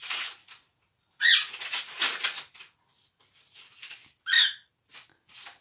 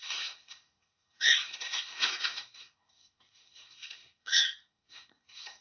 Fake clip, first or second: second